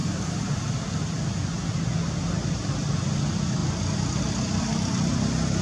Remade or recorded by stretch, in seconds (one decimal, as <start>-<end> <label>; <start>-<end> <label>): 0.0-5.6 recorded